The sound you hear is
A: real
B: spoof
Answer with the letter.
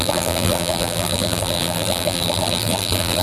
B